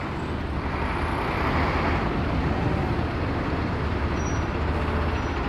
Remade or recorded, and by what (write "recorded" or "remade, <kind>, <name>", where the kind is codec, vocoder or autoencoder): recorded